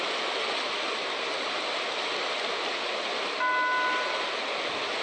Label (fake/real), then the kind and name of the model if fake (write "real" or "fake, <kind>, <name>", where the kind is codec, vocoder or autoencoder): real